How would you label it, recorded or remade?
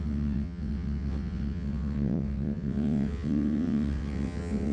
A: remade